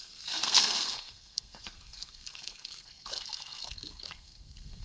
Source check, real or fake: fake